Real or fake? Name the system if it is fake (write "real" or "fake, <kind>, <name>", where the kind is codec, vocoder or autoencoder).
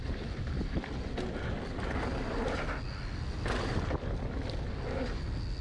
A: real